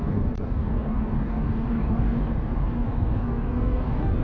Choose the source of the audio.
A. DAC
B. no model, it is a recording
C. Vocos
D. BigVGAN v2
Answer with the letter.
A